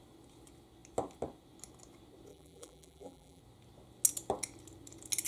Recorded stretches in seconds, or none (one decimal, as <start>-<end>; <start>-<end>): 0.0-2.3; 3.4-5.3